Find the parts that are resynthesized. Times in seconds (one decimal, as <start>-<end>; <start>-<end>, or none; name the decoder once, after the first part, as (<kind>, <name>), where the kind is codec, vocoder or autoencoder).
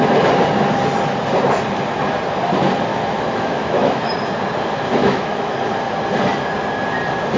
2.9-4.1 (autoencoder, DAC-VAE); 5.0-5.5